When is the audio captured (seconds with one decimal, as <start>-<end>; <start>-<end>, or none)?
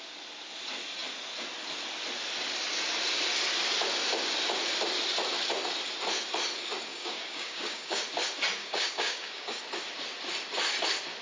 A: 0.0-6.9; 8.0-8.6; 9.6-11.2